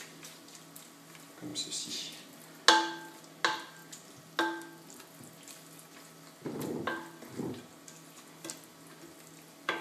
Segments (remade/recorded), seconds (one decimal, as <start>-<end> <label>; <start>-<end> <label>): 0.0-9.8 recorded